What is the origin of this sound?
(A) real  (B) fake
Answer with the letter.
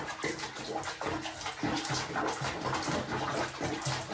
A